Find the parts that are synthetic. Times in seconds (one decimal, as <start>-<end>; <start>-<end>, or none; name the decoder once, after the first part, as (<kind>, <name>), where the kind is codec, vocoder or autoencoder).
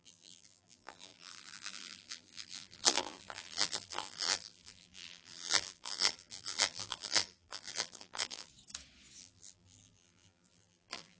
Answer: 0.0-8.5 (vocoder, BigVGAN v2); 9.2-11.2